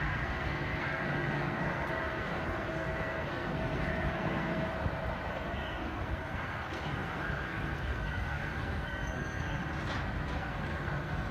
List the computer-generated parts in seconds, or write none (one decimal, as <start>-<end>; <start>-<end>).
0.0-4.7; 5.3-9.6; 10.3-11.3